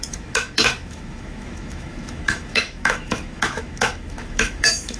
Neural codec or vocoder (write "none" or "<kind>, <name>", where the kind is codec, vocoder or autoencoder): autoencoder, DAC-VAE